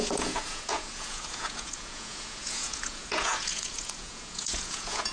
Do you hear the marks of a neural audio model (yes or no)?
yes